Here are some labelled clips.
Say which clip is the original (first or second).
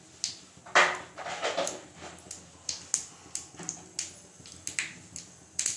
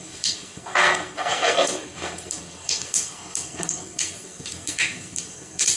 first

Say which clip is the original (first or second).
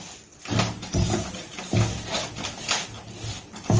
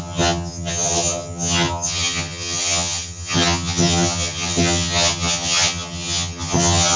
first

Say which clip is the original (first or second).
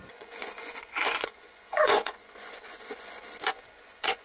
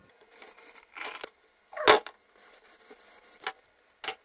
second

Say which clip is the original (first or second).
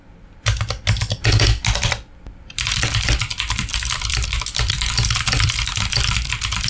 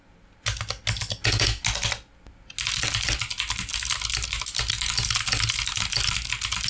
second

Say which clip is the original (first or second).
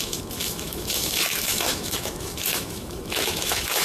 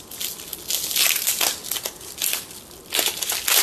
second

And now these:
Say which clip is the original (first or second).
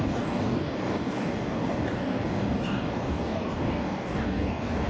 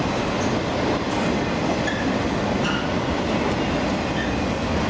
second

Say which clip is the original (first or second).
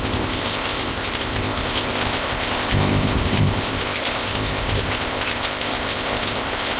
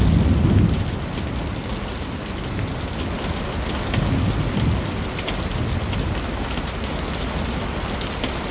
second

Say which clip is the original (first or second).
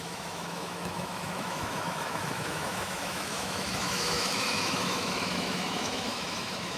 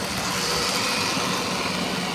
second